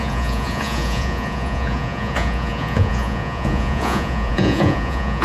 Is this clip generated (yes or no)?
yes